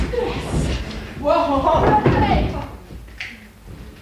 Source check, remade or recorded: recorded